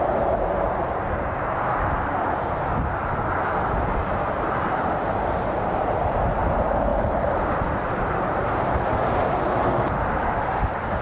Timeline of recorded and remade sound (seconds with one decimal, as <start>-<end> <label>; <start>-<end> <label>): 0.0-1.0 remade; 1.0-4.0 recorded; 4.0-11.0 remade